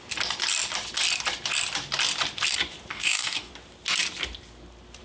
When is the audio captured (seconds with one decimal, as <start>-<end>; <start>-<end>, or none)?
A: 0.0-2.9; 3.5-5.0